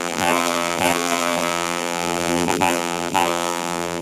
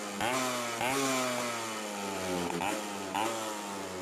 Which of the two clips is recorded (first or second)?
second